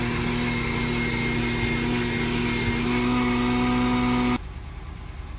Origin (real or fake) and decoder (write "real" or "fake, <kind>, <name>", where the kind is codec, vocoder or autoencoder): real